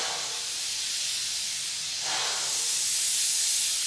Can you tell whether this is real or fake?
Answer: real